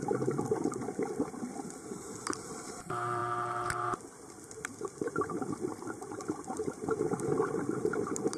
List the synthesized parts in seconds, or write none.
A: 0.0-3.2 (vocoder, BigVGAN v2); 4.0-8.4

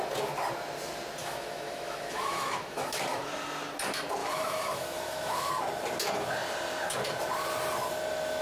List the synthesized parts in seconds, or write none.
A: 1.2-3.3 (autoencoder, DAC-VAE); 4.2-5.5

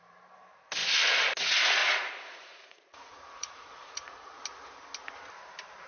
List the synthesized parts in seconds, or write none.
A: 1.8-4.4 (vocoder, Vocos)

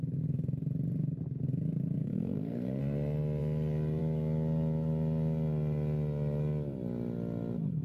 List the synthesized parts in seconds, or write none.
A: 2.0-2.8 (codec, SNAC)